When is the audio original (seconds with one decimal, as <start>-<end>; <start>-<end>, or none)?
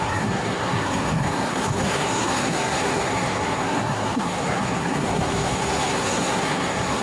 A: none